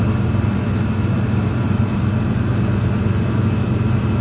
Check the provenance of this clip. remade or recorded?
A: recorded